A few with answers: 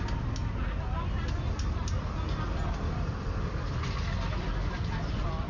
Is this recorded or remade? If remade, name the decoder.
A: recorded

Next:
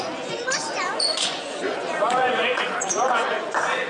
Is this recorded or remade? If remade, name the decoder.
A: remade, vocoder, Vocos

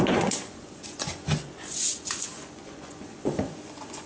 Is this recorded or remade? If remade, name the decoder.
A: remade, vocoder, Vocos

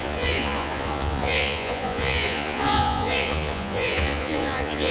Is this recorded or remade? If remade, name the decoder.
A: remade, vocoder, Vocos